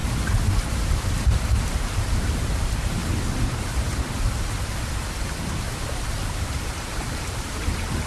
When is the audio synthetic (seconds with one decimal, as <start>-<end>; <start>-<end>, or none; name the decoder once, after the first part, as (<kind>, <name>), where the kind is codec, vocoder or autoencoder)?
1.7-3.0 (vocoder, BigVGAN v2); 6.3-8.1